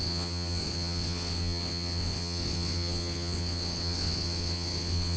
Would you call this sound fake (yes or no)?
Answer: yes